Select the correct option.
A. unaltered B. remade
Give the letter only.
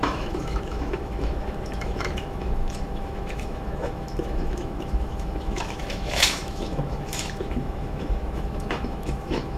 B